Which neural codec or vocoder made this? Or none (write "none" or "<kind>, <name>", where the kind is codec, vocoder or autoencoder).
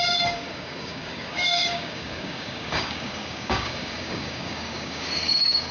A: codec, DAC